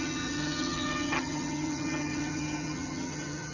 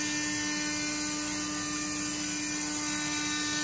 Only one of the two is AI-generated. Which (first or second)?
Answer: first